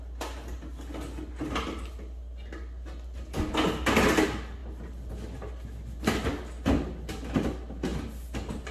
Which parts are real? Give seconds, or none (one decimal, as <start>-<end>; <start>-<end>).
0.0-8.7